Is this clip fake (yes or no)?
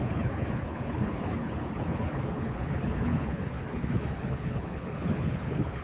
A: yes